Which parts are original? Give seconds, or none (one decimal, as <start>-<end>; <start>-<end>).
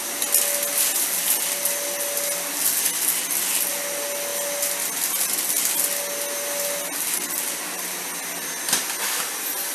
0.0-9.7